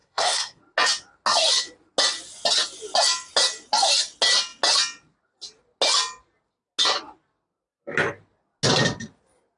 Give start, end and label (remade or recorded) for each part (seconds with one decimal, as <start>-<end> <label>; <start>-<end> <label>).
0.0-0.6 remade; 0.6-9.6 recorded

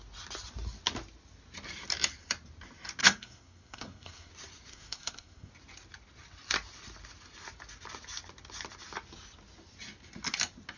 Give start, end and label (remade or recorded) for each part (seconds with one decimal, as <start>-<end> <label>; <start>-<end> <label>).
0.0-3.0 recorded; 3.0-4.3 remade; 4.3-4.7 recorded; 4.7-5.5 remade; 5.5-10.8 recorded

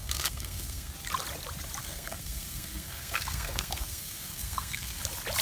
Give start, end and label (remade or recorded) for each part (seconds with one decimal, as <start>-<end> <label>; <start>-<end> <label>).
0.0-0.9 remade; 0.9-1.8 recorded; 1.8-5.0 remade; 5.0-5.4 recorded

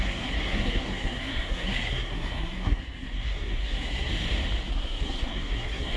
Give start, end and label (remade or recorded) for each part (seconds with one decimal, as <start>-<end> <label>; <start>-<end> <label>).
0.0-4.1 remade; 4.1-4.7 recorded; 4.7-6.0 remade

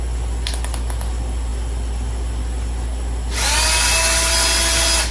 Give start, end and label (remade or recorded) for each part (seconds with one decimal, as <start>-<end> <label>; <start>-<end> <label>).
0.0-5.1 recorded

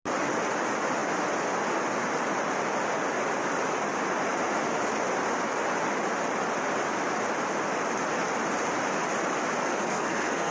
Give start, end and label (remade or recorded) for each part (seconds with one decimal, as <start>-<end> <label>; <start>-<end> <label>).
0.0-9.6 recorded; 9.6-10.5 remade

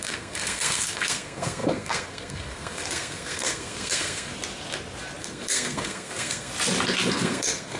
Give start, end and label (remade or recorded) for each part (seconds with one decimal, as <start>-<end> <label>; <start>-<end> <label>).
0.0-4.3 remade; 4.3-5.2 recorded; 5.2-6.5 remade; 6.5-7.1 recorded; 7.1-7.8 remade